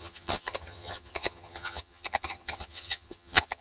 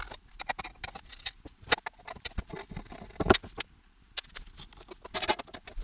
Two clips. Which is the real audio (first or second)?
second